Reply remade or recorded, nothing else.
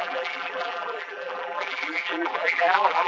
remade